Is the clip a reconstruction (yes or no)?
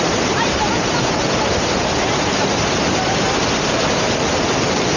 yes